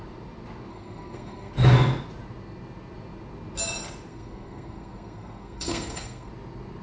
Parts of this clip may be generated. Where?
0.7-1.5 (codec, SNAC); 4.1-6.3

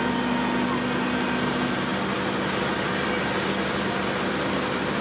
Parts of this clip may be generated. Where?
none

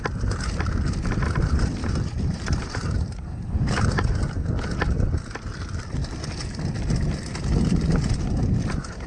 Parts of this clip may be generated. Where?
1.8-4.2 (vocoder, BigVGAN v2)

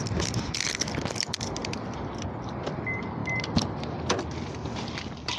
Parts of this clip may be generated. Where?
none